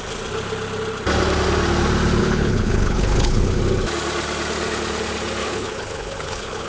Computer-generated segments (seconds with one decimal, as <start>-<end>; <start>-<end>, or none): 2.2-3.6; 5.4-6.7